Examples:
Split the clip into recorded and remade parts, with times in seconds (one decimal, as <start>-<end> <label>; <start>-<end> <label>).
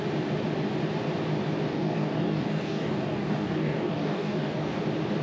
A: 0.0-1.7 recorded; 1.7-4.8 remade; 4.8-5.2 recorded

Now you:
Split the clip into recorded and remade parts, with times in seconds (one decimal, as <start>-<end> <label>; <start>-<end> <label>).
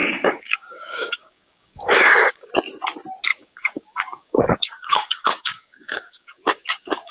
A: 0.0-2.5 remade; 2.5-3.3 recorded; 3.3-7.1 remade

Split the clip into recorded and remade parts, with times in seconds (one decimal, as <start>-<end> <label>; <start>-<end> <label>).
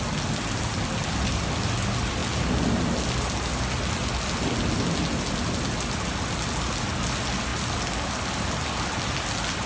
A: 0.0-9.7 recorded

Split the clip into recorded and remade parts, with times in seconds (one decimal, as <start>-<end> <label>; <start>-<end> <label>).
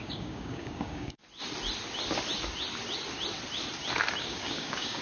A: 0.0-1.2 remade; 1.2-4.2 recorded; 4.2-5.0 remade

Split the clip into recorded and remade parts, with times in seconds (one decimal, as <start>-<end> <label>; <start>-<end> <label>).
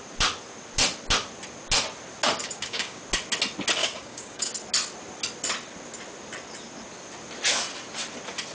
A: 0.0-2.4 recorded; 2.4-3.0 remade; 3.0-3.8 recorded; 3.8-4.5 remade; 4.5-8.5 recorded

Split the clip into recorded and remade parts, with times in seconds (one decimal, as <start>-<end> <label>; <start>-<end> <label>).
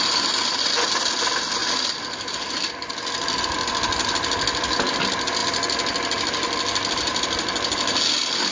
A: 0.0-8.5 recorded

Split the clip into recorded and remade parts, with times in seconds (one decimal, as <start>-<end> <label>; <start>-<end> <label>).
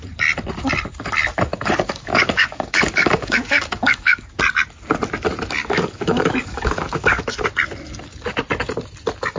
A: 0.0-1.5 recorded; 1.5-4.4 remade; 4.4-5.6 recorded; 5.6-7.4 remade; 7.4-9.4 recorded